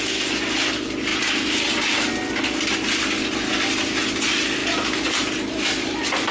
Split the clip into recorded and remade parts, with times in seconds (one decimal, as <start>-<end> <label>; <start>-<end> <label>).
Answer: 0.0-6.3 recorded